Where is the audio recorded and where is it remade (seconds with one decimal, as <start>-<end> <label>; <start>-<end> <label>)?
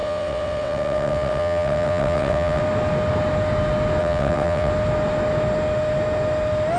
0.0-2.6 remade; 2.6-4.0 recorded; 4.0-4.7 remade; 4.7-6.8 recorded